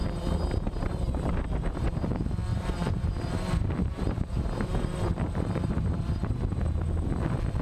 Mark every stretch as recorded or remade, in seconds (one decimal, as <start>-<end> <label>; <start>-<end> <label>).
0.0-2.1 remade; 2.1-2.5 recorded; 2.5-6.9 remade; 6.9-7.6 recorded